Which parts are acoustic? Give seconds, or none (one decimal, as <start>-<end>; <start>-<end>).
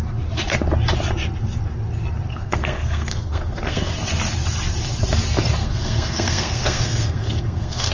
0.0-2.3; 3.9-5.6